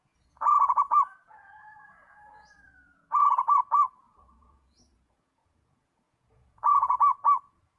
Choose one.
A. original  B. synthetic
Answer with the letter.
B